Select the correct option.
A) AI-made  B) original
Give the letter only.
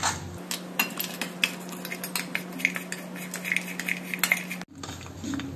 B